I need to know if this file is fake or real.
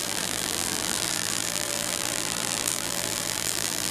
fake